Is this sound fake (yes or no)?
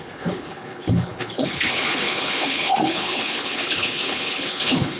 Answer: yes